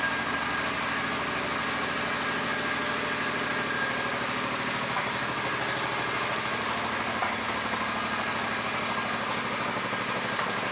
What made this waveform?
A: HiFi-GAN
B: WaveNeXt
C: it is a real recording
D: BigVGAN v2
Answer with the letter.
C